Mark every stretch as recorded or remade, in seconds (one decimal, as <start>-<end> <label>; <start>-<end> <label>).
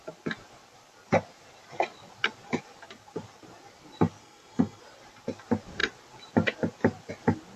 0.0-4.2 recorded; 4.2-4.8 remade; 4.8-7.6 recorded